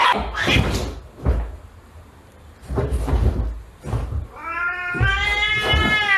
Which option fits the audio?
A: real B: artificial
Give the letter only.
A